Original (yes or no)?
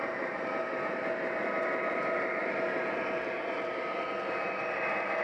yes